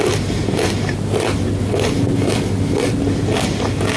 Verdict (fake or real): real